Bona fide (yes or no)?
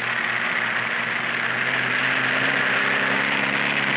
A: yes